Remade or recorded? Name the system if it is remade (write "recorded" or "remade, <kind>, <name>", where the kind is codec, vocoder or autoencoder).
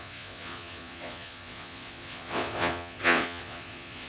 remade, vocoder, Vocos